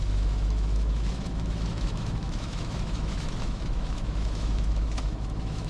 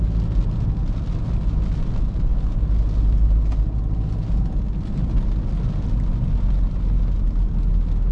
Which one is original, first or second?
second